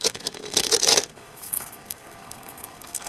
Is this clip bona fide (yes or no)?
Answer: no